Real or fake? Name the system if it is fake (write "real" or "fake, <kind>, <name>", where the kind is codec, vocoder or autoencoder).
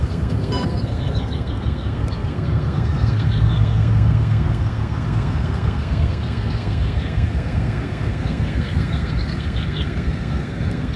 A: fake, codec, SNAC